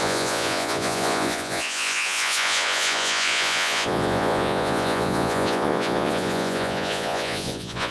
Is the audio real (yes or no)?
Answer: no